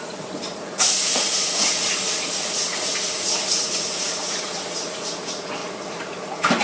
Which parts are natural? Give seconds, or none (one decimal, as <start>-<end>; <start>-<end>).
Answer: none